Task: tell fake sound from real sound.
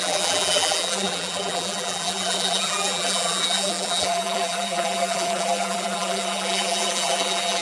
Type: fake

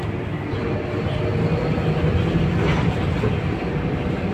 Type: real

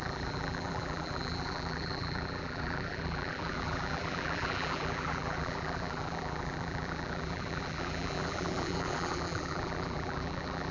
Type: fake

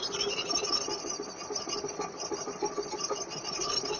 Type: fake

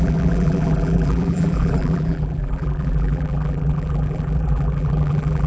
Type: fake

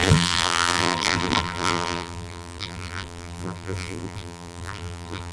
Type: fake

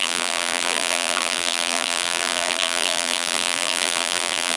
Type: fake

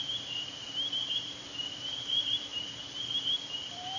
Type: fake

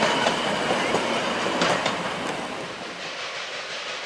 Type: real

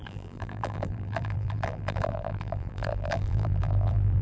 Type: fake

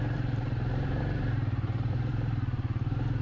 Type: fake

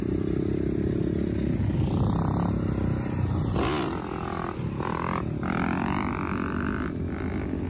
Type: real